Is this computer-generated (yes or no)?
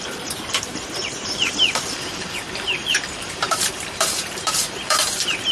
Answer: yes